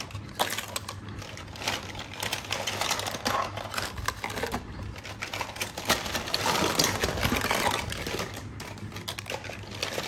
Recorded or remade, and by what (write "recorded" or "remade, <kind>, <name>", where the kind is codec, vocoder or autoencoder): recorded